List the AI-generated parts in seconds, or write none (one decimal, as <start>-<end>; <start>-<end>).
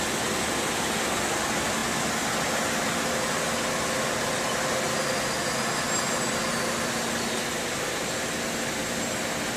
none